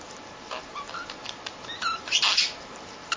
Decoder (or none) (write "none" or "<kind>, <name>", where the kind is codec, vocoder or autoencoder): none